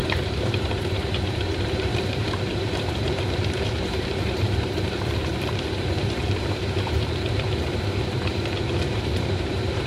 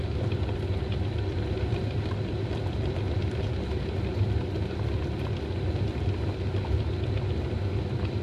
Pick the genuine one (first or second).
second